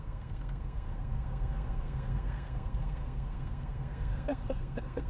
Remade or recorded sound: remade